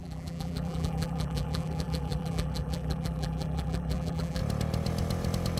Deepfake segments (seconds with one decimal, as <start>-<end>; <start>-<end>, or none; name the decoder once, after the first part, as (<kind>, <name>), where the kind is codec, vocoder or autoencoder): 0.0-4.4 (vocoder, BigVGAN v2)